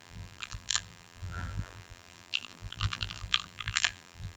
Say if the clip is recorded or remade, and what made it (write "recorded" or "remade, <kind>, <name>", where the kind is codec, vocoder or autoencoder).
remade, vocoder, BigVGAN v2